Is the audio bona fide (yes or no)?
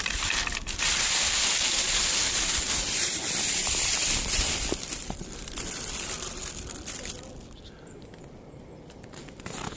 no